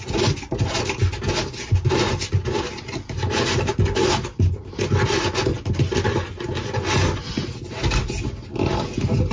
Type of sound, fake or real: real